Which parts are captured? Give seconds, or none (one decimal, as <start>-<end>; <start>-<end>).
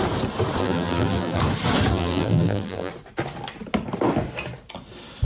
0.0-0.6; 1.4-1.9; 2.9-5.2